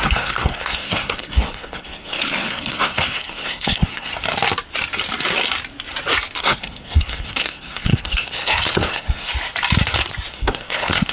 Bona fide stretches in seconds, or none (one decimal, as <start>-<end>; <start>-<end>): 4.1-6.4; 9.3-10.3